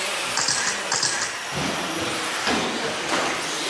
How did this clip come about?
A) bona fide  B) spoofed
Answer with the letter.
A